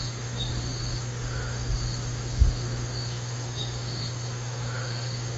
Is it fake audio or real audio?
fake